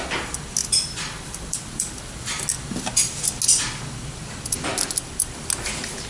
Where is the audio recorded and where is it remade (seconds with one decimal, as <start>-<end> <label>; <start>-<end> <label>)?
0.0-0.6 recorded; 0.6-2.2 remade; 2.2-6.1 recorded